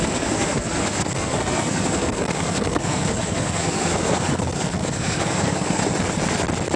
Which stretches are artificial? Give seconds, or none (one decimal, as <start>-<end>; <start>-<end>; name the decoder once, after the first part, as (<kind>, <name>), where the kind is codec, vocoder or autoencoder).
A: 0.0-5.8 (codec, SNAC)